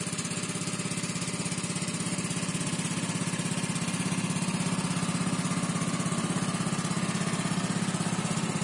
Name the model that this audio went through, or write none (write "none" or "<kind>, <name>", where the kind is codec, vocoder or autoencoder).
none